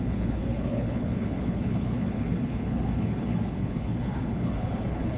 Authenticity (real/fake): fake